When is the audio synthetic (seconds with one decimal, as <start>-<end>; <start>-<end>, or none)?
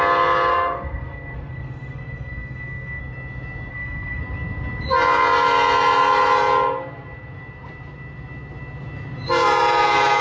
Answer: 0.5-3.0; 3.7-4.2